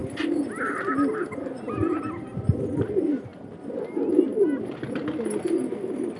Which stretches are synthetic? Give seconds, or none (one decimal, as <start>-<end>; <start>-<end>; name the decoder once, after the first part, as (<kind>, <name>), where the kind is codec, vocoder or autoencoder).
none